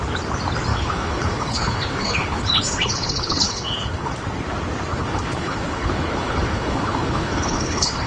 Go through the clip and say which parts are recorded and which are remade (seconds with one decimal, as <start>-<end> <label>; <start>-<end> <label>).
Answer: 0.0-0.7 recorded; 0.7-4.1 remade; 4.1-4.9 recorded; 4.9-8.1 remade